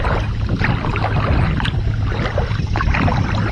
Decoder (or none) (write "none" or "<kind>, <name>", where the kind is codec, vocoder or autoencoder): none